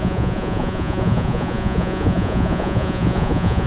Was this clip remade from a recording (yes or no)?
yes